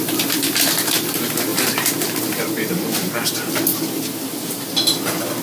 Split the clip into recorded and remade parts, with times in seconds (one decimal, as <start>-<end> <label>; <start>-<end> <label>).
0.0-1.5 recorded; 1.5-2.7 remade; 2.7-3.7 recorded; 3.7-4.7 remade; 4.7-5.4 recorded